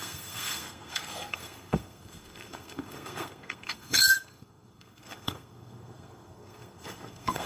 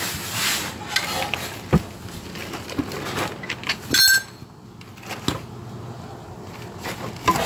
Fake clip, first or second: first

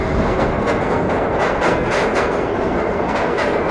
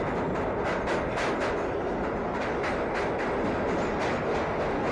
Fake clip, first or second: first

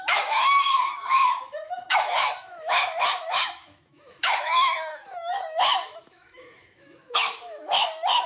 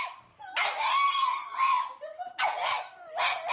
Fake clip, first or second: first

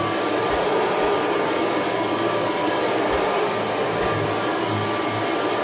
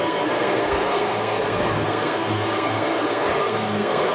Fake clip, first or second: second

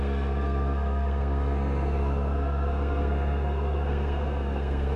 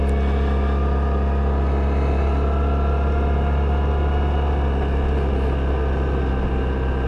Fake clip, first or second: first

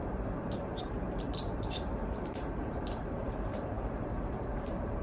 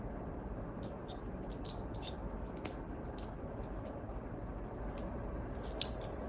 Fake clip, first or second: first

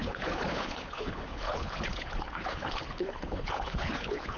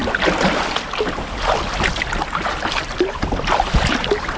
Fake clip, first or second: first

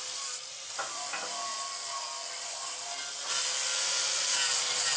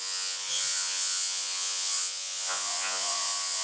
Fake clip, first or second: second